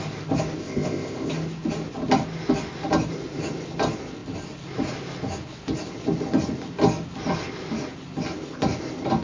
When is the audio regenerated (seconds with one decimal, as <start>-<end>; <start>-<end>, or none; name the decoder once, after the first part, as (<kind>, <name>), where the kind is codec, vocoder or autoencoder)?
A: 0.6-1.3 (codec, ZipCodec)